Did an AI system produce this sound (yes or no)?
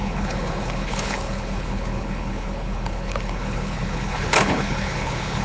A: yes